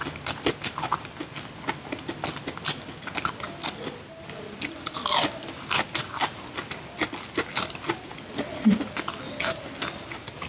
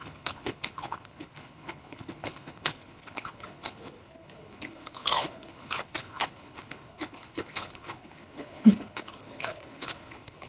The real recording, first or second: first